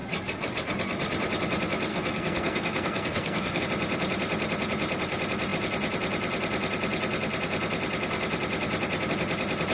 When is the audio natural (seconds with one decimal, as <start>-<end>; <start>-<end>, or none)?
0.0-1.9; 3.6-9.7